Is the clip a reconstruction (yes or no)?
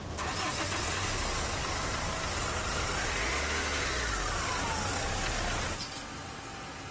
no